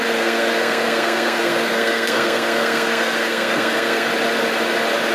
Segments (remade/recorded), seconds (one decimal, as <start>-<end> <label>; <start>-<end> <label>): 0.0-4.1 remade; 4.1-5.1 recorded